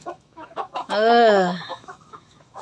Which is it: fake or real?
fake